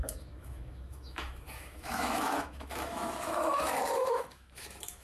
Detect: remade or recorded remade